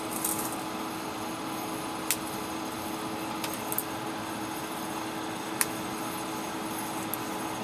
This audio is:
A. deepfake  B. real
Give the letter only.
B